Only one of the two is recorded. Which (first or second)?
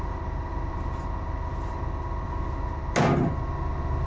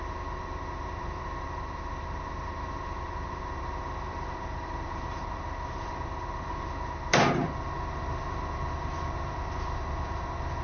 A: first